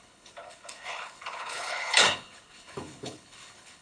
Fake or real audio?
fake